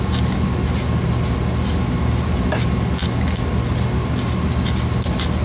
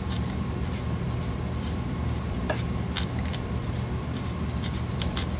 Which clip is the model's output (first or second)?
second